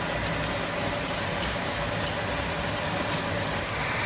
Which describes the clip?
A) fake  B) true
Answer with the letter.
B